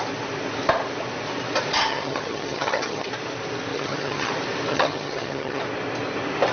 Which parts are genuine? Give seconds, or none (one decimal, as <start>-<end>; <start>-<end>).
0.0-1.9; 3.1-3.7; 4.3-4.7; 5.6-6.5